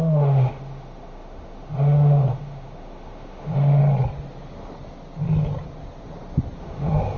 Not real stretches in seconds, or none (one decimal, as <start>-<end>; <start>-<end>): 0.0-3.8; 6.6-7.2